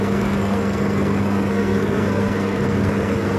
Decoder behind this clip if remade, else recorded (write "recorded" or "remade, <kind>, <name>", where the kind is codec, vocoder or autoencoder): remade, codec, SNAC